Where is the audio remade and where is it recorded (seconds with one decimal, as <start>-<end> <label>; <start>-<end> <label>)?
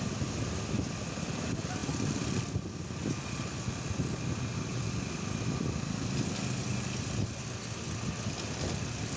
0.0-9.2 recorded